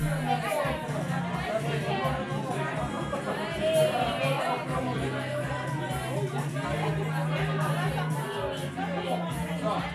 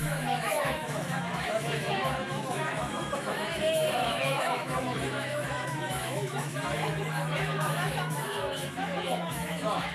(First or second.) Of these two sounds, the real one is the first